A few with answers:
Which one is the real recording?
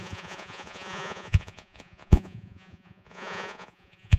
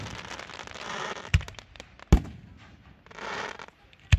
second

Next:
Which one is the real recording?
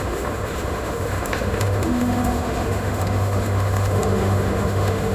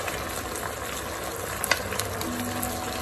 second